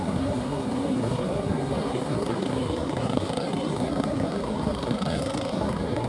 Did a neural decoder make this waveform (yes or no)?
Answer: yes